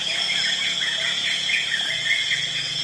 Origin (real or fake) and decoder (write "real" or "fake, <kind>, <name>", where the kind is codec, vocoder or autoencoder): fake, vocoder, Vocos